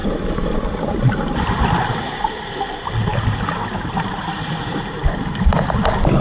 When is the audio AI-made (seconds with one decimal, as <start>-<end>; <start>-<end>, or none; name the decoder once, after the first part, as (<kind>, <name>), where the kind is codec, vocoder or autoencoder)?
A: none